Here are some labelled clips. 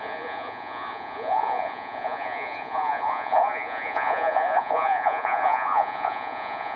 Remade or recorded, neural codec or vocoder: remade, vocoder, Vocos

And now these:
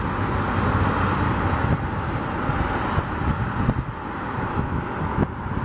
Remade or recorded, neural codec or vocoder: recorded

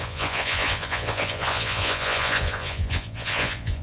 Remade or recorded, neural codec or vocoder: remade, vocoder, Vocos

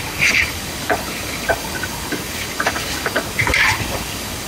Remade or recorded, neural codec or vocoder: remade, codec, DAC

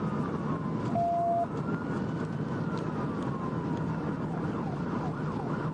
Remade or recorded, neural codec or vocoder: recorded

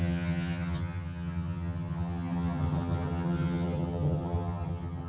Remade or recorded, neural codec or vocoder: remade, vocoder, HiFi-GAN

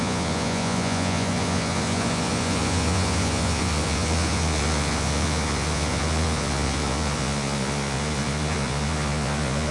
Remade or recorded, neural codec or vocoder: remade, vocoder, Vocos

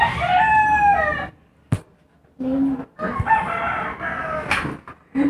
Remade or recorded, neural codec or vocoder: recorded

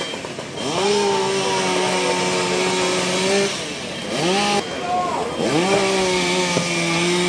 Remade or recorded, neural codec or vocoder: recorded